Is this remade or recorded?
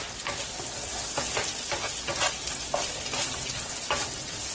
recorded